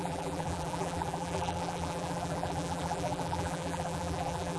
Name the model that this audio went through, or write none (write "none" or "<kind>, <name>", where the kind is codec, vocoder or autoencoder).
vocoder, BigVGAN v2